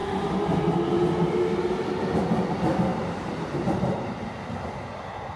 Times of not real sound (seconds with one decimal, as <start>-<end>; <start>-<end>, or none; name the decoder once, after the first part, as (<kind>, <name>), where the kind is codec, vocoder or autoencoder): 2.9-4.4 (vocoder, BigVGAN v2)